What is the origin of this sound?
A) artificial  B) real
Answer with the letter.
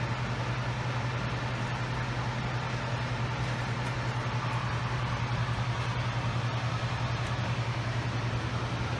B